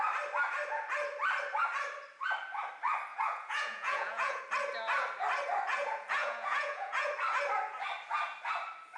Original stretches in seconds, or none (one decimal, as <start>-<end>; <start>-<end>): 0.0-3.1; 4.4-5.7; 7.1-9.0